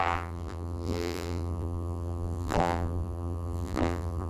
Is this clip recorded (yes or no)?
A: no